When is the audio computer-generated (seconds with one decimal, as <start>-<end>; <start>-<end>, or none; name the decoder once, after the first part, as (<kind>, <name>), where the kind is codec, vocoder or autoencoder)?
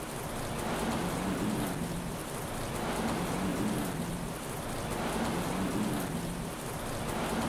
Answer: 2.2-2.7 (vocoder, BigVGAN v2); 3.5-4.1